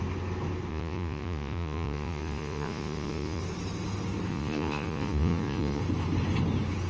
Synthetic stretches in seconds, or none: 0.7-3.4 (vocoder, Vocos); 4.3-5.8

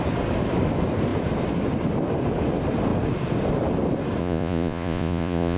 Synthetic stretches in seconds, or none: 4.2-5.6 (vocoder, Vocos)

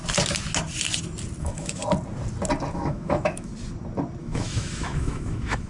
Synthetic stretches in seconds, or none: 1.4-1.8 (autoencoder, DAC-VAE); 2.7-3.5; 4.2-5.7

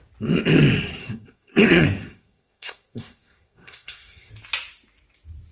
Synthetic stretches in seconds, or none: 1.0-4.3 (codec, SNAC)

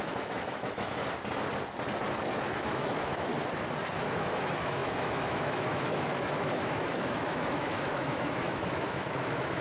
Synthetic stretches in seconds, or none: 0.0-1.0 (autoencoder, DAC-VAE); 2.3-3.3; 4.1-9.6